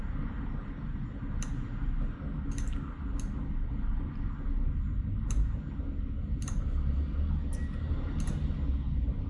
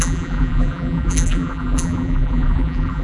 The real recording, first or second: first